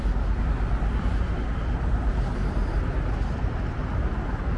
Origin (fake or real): real